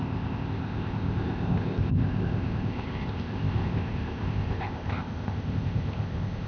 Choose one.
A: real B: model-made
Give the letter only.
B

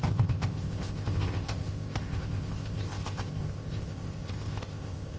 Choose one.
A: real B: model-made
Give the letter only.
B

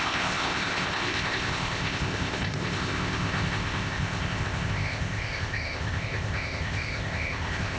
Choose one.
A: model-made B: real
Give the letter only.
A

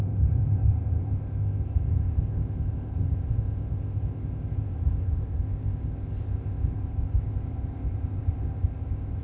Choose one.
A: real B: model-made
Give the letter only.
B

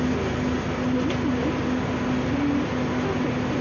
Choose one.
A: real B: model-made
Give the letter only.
A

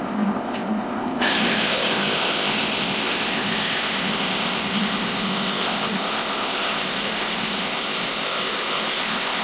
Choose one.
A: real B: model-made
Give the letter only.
B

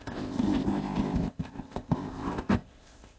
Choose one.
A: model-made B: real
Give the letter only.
A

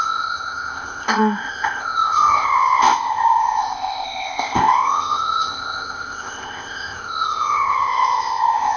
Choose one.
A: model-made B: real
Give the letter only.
A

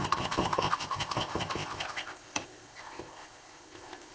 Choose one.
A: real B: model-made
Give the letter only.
B